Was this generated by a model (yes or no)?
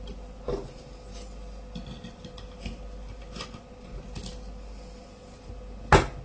no